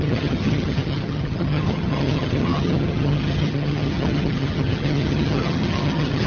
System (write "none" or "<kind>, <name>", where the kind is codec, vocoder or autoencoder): vocoder, HiFi-GAN